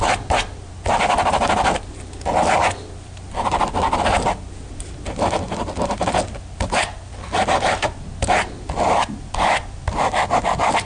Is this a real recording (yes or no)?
yes